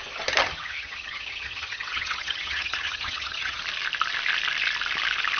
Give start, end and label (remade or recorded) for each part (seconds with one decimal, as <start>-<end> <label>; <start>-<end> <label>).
0.0-0.4 recorded; 0.4-3.6 remade; 3.6-5.4 recorded